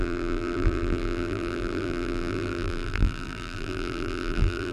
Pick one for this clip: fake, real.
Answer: fake